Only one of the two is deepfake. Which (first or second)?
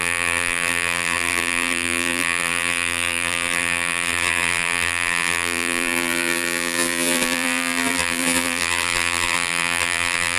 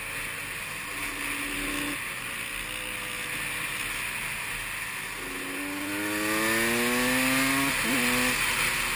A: first